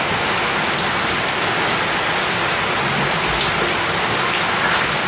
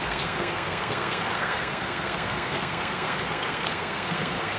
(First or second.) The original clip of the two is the first